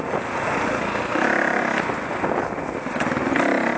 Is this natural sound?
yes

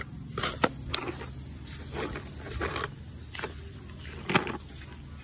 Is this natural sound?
yes